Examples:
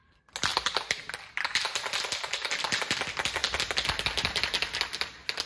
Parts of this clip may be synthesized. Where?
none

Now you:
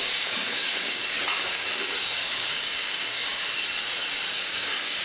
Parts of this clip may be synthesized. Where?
0.0-3.4 (codec, DAC); 4.4-5.0

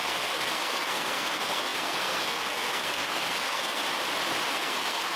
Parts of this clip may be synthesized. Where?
0.0-3.8 (codec, SNAC); 4.5-5.2